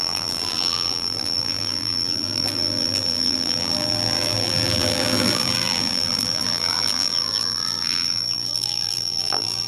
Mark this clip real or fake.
fake